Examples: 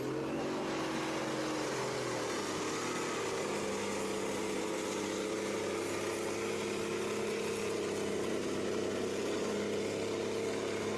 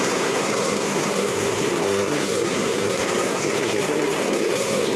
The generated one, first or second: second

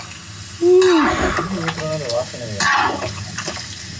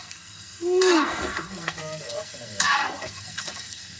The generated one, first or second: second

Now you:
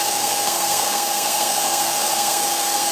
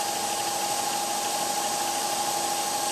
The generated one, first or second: first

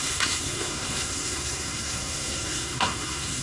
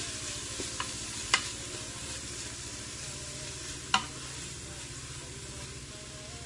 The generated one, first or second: first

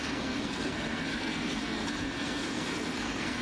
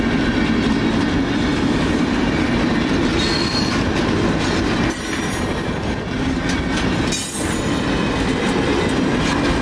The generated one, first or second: first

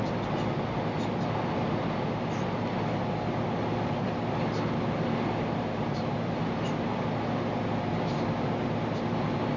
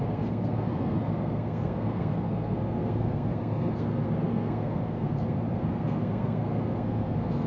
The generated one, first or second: second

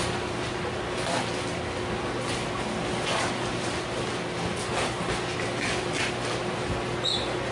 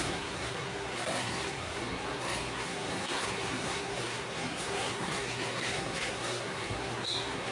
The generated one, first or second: second